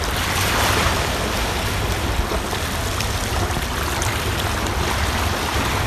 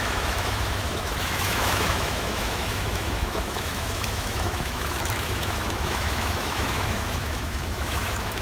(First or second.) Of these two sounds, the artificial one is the second